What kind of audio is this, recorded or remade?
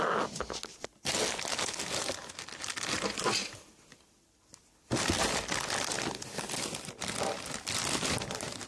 recorded